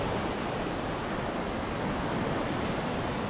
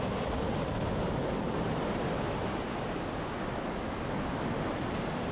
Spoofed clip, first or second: first